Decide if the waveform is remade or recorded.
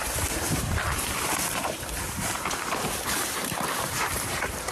remade